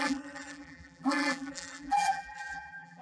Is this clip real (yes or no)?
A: no